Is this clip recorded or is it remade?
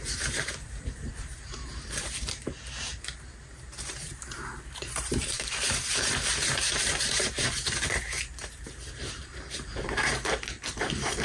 remade